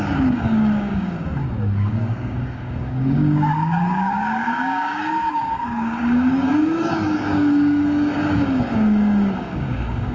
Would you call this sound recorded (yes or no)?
no